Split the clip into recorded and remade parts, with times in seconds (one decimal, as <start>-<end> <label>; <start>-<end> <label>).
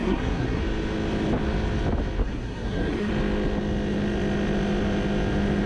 0.0-0.6 remade; 0.6-2.2 recorded; 2.2-3.1 remade; 3.1-5.7 recorded